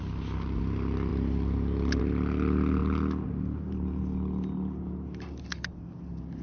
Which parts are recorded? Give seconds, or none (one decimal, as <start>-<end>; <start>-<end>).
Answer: 0.0-6.4